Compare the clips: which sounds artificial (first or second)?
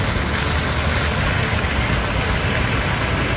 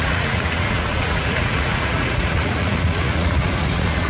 second